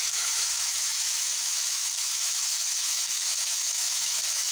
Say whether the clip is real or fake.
fake